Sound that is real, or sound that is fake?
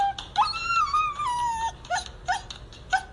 real